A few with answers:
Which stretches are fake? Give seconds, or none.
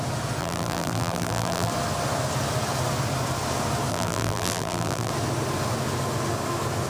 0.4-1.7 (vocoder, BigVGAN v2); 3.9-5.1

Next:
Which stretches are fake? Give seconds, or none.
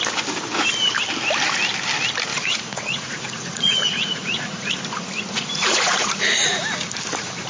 2.3-6.6 (vocoder, Vocos)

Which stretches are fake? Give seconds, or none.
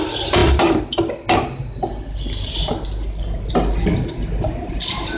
none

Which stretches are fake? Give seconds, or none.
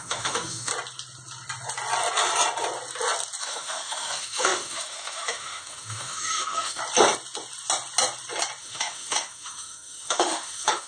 0.0-0.7 (autoencoder, DAC-VAE); 3.4-6.8; 8.6-10.9